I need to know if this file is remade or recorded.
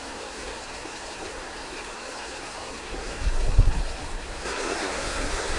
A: remade